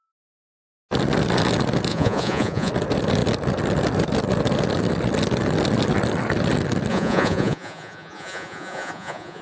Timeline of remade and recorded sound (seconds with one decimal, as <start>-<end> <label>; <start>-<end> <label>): 0.0-1.9 recorded; 1.9-2.7 remade; 2.7-6.9 recorded; 6.9-9.4 remade